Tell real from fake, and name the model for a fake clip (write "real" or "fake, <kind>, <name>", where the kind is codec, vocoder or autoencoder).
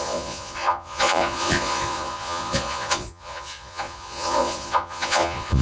fake, vocoder, Vocos